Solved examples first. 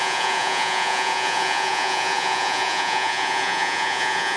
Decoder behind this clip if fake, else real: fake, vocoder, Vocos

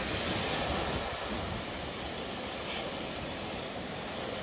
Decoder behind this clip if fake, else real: real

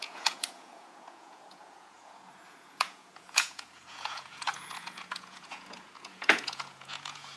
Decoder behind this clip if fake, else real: fake, vocoder, Vocos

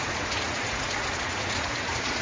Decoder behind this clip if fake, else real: fake, vocoder, Vocos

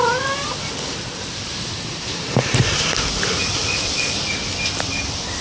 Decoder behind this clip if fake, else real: real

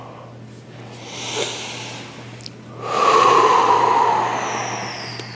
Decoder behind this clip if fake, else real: real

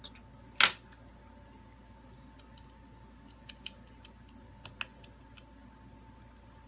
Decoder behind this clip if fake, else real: real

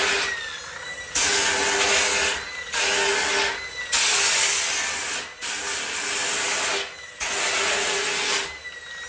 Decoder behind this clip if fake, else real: real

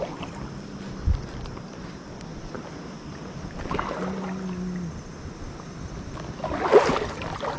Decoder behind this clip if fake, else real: real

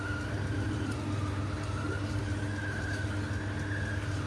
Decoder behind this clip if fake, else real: real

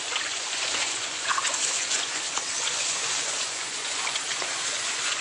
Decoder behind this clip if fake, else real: fake, vocoder, Vocos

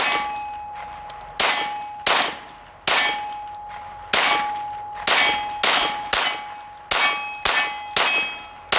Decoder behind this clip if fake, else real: real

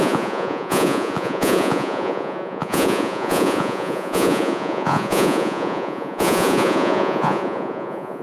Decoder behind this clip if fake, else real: fake, vocoder, Vocos